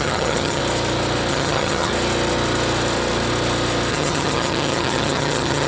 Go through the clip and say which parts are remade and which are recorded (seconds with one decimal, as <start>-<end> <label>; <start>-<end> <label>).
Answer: 0.0-0.6 remade; 0.6-1.3 recorded; 1.3-1.9 remade; 1.9-3.9 recorded; 3.9-5.7 remade